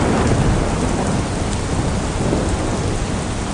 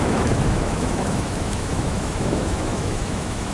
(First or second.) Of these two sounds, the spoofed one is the second